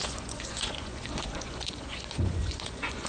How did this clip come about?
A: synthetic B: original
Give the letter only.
A